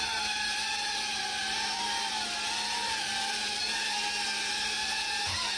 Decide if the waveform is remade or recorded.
remade